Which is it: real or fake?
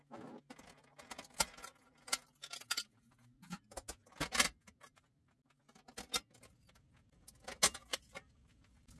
real